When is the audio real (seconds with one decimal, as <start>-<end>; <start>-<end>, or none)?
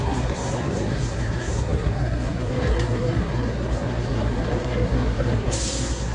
none